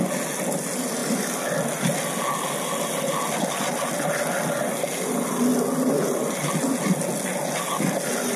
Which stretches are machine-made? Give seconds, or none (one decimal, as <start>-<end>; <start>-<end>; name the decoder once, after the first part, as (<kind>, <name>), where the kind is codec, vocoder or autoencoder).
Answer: none